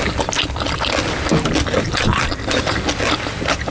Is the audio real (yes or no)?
yes